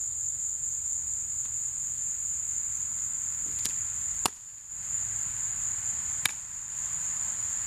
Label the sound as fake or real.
real